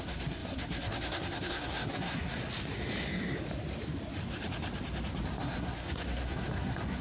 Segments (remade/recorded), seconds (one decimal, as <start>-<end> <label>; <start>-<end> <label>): 0.0-2.4 remade; 2.4-5.4 recorded; 5.4-7.0 remade